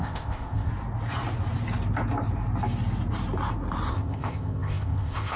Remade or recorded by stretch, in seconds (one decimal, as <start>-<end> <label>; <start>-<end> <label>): 0.0-0.7 remade; 0.7-3.9 recorded; 3.9-5.4 remade